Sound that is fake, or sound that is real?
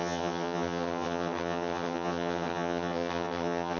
fake